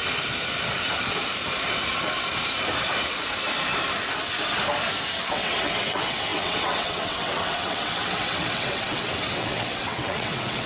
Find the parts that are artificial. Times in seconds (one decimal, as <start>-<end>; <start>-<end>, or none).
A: 5.3-10.7